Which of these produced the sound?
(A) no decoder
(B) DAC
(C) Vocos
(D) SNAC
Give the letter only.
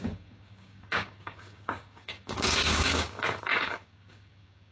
B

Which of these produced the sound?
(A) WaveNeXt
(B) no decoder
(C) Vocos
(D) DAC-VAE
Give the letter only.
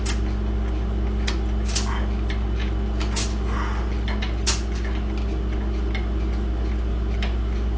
B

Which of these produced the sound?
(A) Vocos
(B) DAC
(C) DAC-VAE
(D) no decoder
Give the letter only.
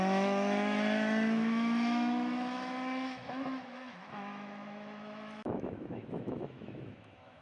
C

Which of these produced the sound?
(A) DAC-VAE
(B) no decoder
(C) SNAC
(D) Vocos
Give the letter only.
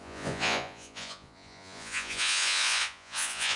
D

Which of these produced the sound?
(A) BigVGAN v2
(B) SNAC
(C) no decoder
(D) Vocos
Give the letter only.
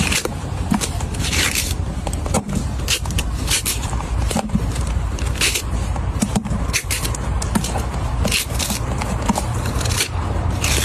A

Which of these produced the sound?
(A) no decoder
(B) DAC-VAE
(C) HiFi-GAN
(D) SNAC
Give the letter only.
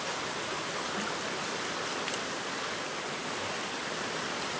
A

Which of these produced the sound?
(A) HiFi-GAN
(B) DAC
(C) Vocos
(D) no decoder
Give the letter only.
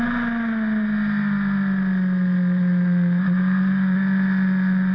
D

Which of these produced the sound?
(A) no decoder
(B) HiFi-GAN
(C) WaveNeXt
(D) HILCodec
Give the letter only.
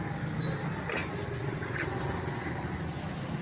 A